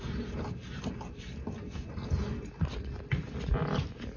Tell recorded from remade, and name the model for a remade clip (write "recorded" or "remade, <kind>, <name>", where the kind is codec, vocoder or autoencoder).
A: recorded